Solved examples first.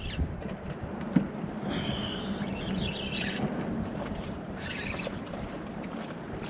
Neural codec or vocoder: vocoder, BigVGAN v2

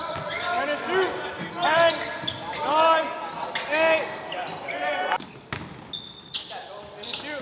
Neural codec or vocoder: none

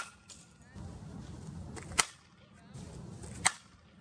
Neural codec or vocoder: none